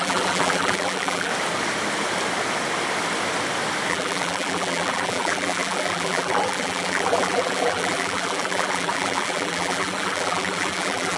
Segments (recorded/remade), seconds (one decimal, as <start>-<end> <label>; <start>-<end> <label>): 0.0-1.3 remade; 1.3-3.9 recorded; 3.9-11.2 remade